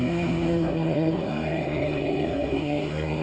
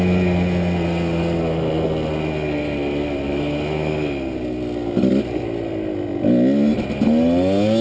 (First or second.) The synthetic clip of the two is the first